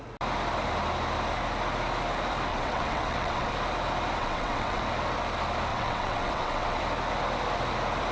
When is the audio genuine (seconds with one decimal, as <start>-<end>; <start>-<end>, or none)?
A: 0.0-2.5; 3.5-4.2; 4.8-5.7; 6.8-8.1